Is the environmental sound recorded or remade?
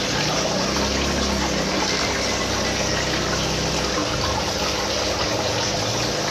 recorded